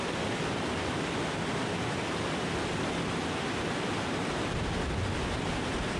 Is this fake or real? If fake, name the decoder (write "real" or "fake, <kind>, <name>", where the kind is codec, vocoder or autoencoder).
real